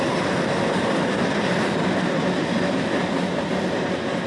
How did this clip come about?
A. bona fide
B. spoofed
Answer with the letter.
A